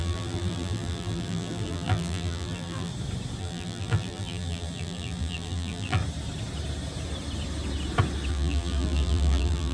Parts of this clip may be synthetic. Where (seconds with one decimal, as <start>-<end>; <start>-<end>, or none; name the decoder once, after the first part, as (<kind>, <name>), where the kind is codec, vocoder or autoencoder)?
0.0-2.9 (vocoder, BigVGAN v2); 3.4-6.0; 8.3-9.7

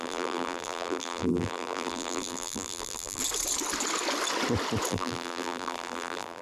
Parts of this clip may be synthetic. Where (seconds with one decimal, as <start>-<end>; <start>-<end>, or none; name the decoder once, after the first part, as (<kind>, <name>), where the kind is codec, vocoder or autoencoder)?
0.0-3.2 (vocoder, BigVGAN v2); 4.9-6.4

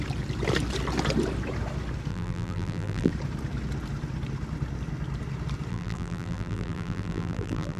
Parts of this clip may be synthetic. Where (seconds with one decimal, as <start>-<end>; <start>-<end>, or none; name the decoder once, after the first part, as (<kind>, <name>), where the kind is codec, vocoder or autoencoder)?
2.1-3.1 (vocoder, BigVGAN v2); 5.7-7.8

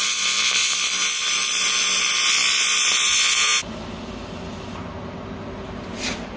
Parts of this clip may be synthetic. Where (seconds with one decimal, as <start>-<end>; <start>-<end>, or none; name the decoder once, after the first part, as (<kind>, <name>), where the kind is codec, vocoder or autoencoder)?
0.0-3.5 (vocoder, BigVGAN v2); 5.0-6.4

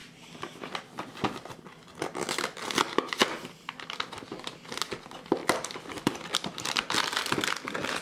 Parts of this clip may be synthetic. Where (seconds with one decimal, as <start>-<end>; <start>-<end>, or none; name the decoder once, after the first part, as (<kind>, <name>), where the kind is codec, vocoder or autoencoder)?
5.4-6.8 (vocoder, BigVGAN v2)

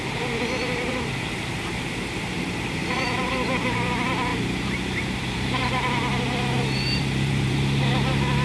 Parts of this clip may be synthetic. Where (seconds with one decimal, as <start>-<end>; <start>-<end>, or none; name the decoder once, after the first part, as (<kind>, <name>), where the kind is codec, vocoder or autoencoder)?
0.0-8.4 (vocoder, BigVGAN v2)

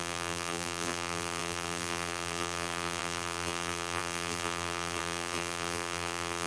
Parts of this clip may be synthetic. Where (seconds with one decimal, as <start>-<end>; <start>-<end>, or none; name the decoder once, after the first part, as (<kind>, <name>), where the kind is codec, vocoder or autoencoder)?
0.0-6.5 (vocoder, BigVGAN v2)